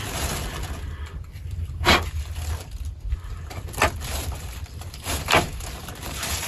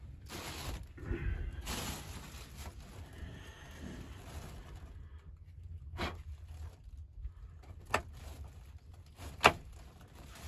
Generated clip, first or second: first